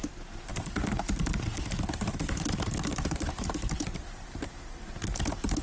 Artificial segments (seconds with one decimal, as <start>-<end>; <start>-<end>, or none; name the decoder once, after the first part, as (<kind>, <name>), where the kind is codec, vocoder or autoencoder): 0.0-5.6 (vocoder, BigVGAN v2)